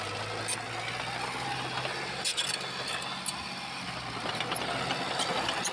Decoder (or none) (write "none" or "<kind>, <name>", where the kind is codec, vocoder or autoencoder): none